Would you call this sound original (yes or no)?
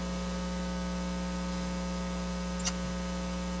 yes